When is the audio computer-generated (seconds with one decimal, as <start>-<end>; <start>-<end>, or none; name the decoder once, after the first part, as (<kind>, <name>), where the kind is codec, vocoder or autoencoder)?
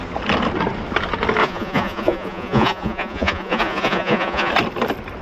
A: 1.4-4.5 (vocoder, Vocos)